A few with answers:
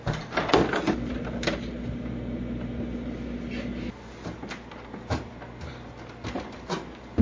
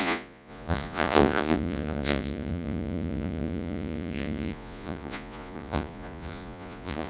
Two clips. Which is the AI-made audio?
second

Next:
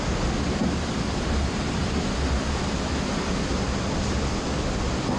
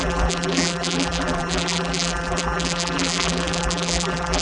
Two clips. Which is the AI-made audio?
second